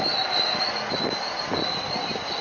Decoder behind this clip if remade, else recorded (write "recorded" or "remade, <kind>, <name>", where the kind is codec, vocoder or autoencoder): recorded